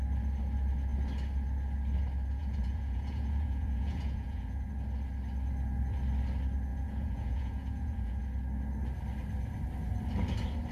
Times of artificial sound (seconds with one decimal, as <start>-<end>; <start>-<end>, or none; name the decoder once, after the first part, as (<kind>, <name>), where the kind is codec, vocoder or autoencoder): 2.4-4.7 (vocoder, Vocos); 6.7-8.2